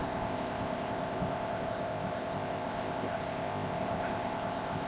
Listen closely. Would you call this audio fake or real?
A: fake